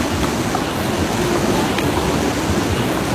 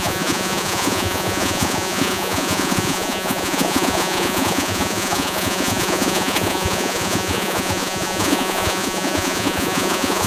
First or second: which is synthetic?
second